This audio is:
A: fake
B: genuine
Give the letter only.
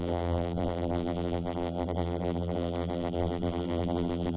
A